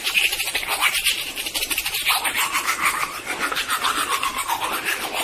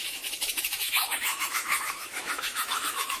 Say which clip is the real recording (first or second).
first